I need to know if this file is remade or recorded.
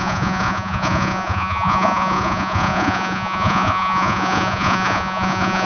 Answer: remade